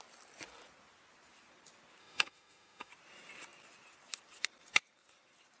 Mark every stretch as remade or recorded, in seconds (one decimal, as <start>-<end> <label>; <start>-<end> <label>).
0.0-2.0 recorded; 2.0-2.9 remade; 2.9-5.6 recorded